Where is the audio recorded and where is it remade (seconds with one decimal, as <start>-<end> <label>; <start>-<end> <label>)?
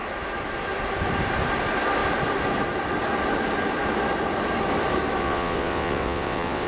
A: 0.0-5.2 recorded; 5.2-6.7 remade